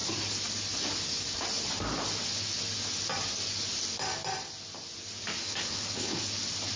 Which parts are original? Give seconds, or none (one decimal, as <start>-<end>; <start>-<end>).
0.0-5.4; 6.2-6.8